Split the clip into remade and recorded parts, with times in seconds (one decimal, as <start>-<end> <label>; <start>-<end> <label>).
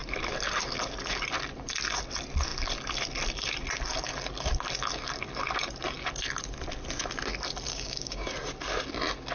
0.0-7.7 recorded; 7.7-8.3 remade; 8.3-9.3 recorded